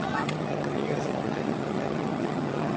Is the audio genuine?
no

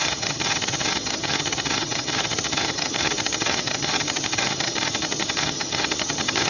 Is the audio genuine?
no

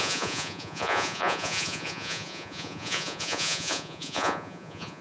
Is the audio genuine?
no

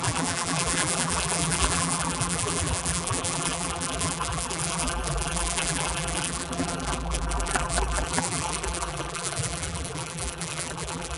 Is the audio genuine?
no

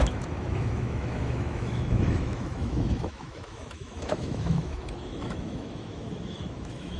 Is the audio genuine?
no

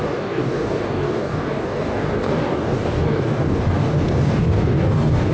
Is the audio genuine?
no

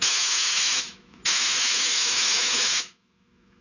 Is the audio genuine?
no